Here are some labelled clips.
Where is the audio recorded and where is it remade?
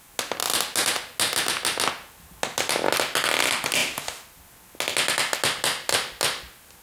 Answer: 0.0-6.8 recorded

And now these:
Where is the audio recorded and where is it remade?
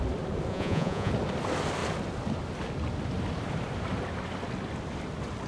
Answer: 0.0-0.5 recorded; 0.5-1.1 remade; 1.1-5.5 recorded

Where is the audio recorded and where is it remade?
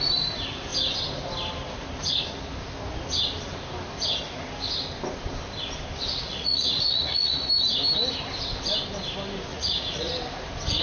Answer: 0.0-6.1 recorded; 6.1-7.5 remade; 7.5-9.5 recorded; 9.5-10.1 remade; 10.1-10.8 recorded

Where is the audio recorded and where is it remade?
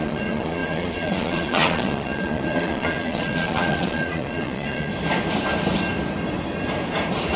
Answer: 0.0-4.9 remade; 4.9-7.4 recorded